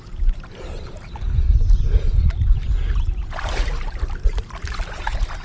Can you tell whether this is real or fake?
fake